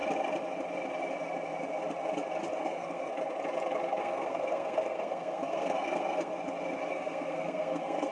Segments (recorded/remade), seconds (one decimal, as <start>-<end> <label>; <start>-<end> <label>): 0.0-2.6 recorded; 2.6-3.1 remade; 3.1-4.0 recorded; 4.0-6.3 remade; 6.3-6.9 recorded; 6.9-8.1 remade